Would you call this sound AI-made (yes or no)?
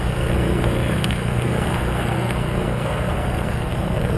yes